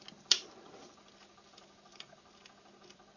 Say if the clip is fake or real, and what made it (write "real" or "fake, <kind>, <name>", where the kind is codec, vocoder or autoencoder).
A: real